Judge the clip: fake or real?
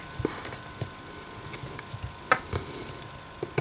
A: real